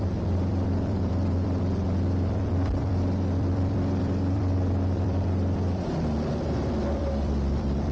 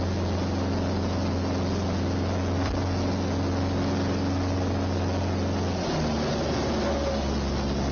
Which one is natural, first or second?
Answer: second